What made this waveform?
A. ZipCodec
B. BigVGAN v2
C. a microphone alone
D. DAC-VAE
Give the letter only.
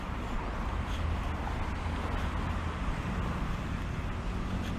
C